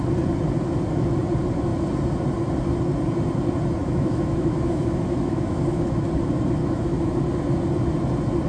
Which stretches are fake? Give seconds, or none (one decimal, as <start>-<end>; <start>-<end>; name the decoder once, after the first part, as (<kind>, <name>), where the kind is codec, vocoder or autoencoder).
3.8-6.1 (autoencoder, DAC-VAE); 6.6-7.2